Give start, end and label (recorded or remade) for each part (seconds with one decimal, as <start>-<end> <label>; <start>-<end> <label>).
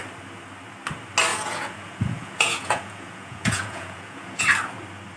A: 0.0-1.3 recorded; 1.3-4.4 remade; 4.4-5.2 recorded